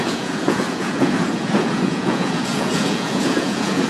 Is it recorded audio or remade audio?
remade